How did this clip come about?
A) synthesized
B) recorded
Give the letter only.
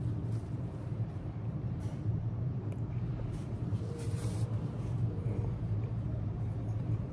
A